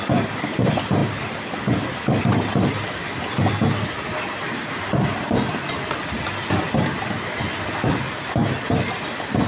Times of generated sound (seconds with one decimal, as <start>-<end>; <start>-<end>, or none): none